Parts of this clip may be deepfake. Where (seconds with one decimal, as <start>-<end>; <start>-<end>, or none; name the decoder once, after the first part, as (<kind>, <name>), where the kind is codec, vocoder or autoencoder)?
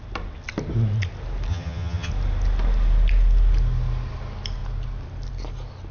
1.5-2.1 (vocoder, HiFi-GAN)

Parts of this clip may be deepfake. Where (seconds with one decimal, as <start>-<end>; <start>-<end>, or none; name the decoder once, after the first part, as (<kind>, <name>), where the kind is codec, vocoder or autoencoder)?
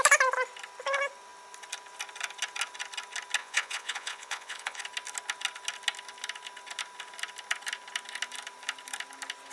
3.4-4.8 (vocoder, Vocos)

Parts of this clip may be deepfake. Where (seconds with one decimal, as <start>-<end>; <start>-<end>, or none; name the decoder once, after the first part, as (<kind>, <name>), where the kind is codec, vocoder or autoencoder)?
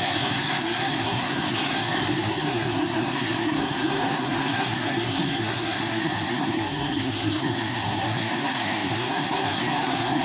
0.0-10.2 (codec, SNAC)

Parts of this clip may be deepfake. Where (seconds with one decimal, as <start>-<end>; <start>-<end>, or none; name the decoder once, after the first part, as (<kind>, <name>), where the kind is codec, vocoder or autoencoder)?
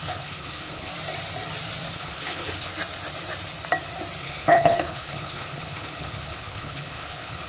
0.0-0.9 (codec, HILCodec); 1.9-2.7; 4.2-7.5